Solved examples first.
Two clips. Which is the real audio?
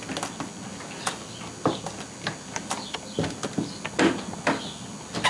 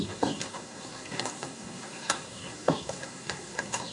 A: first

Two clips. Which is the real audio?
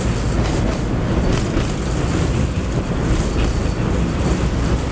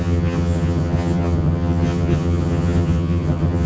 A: first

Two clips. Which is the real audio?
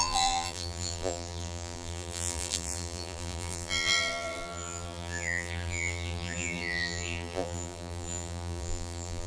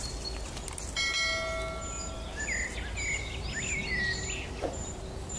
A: second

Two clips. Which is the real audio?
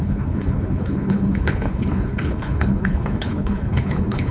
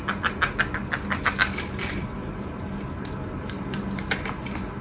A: second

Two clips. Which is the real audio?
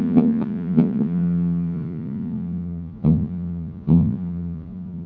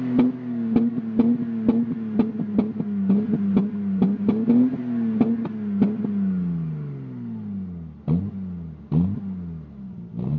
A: second